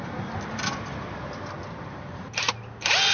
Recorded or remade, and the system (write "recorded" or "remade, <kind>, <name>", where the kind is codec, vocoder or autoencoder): recorded